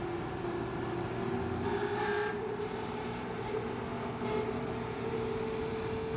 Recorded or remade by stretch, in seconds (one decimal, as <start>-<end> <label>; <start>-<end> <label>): 0.0-1.8 recorded; 1.8-3.5 remade; 3.5-6.2 recorded